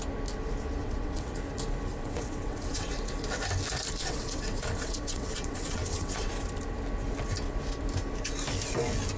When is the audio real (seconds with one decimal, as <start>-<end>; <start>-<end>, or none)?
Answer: 0.0-0.8; 1.4-1.9; 2.9-4.0; 6.3-9.2